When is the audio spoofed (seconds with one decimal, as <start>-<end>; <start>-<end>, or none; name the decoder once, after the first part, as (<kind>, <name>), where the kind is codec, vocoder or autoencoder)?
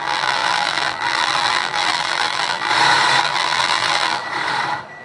0.0-2.7 (vocoder, BigVGAN v2); 3.2-4.2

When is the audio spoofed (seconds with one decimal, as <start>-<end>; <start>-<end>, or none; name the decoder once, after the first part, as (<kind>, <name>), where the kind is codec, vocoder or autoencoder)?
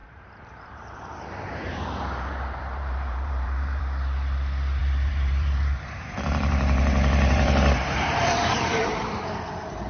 0.0-3.8 (vocoder, BigVGAN v2); 4.8-9.4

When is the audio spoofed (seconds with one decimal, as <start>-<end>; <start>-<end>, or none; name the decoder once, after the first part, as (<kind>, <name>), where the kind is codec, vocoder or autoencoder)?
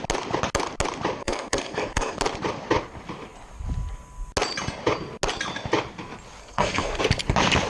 1.2-2.2 (codec, SNAC); 6.4-7.0